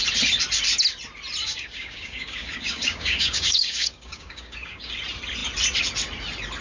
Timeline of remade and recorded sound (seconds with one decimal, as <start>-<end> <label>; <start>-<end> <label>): 0.0-1.4 recorded; 1.4-4.9 remade; 4.9-6.6 recorded